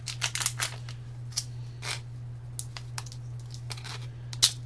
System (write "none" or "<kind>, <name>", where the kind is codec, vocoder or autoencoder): none